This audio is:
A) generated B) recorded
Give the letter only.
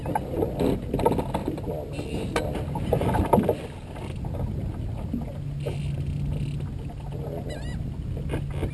B